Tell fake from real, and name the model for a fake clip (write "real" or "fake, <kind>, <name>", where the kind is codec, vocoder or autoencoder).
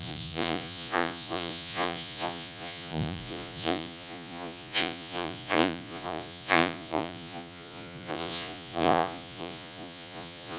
fake, vocoder, Vocos